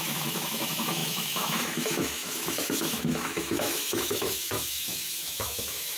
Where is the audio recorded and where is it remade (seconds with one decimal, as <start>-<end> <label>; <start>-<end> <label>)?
0.0-6.0 remade